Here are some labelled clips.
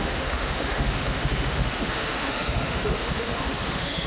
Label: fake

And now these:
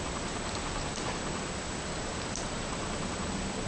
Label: real